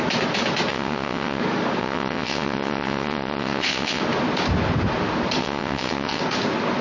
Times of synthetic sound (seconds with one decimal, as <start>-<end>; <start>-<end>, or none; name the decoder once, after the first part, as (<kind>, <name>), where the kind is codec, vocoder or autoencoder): 0.7-1.4 (vocoder, WaveNeXt); 1.8-4.0; 5.4-6.2